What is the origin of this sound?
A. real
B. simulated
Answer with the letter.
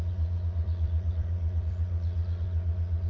B